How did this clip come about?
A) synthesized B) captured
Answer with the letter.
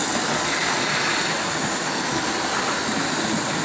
B